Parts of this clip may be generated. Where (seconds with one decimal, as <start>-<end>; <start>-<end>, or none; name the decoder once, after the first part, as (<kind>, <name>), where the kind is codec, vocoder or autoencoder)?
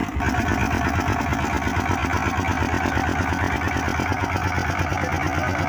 none